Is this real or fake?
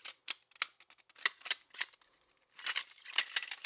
real